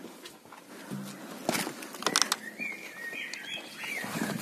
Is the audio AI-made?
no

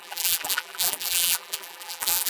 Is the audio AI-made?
yes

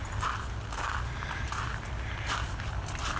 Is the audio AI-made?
no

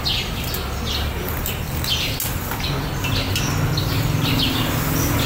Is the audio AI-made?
no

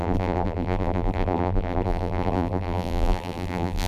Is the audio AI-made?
yes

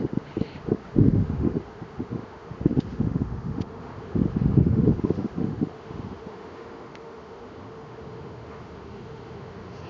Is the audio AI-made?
yes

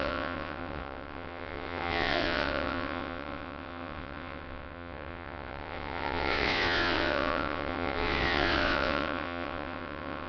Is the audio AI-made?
yes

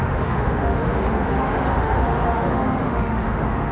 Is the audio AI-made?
yes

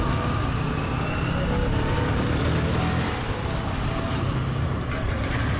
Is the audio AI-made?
no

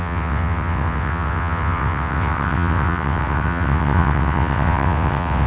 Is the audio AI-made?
yes